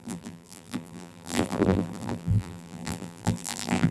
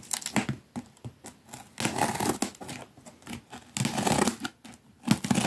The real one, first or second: second